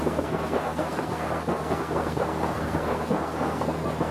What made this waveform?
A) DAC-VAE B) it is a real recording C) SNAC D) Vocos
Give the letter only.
C